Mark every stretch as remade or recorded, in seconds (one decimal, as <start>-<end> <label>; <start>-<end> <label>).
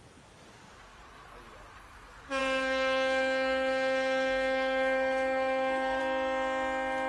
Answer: 0.0-2.4 recorded; 2.4-6.0 remade; 6.0-7.1 recorded